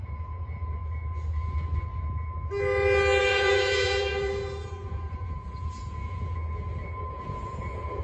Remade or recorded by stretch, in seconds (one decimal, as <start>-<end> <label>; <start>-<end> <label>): 0.0-0.8 remade; 0.8-3.2 recorded; 3.2-6.4 remade; 6.4-7.1 recorded; 7.1-8.0 remade